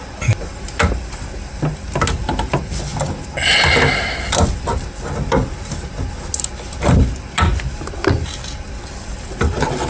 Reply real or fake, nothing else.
real